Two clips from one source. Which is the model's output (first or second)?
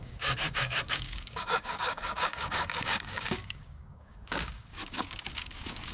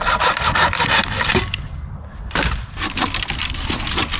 first